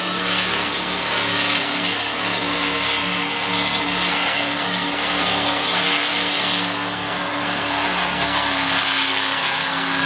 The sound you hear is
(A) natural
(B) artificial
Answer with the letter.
B